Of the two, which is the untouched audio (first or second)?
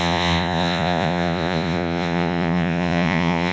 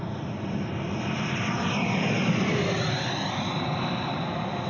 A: second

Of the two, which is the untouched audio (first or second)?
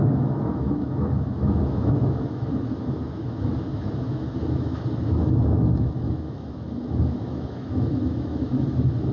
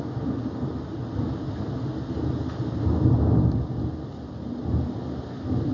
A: second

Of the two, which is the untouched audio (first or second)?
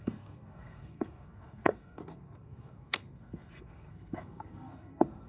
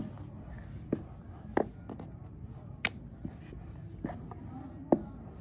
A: second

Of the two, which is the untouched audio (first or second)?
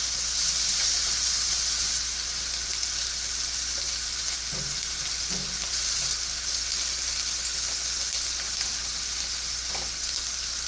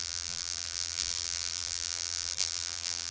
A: first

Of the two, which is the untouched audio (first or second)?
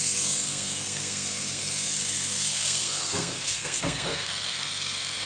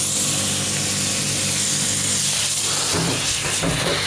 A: second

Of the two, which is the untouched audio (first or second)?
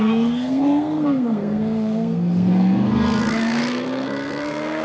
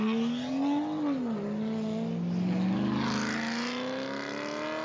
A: second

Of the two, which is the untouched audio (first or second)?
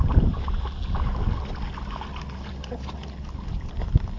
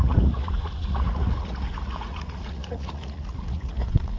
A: first